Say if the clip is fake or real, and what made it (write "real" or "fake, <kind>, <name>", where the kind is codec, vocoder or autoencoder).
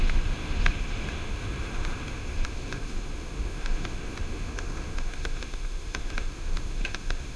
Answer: fake, autoencoder, DAC-VAE